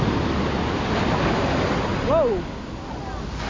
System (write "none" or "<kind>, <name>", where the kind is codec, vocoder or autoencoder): none